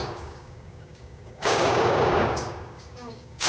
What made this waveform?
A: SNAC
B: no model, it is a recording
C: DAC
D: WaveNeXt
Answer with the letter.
C